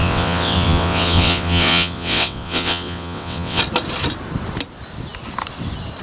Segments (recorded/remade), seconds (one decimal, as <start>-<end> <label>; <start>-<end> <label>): 0.0-3.6 remade; 3.6-6.0 recorded